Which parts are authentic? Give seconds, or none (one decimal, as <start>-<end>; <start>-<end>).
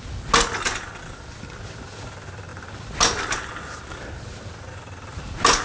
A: 0.0-5.6